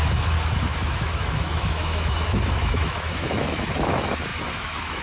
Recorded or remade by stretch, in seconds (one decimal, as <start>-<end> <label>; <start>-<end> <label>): 0.0-5.0 remade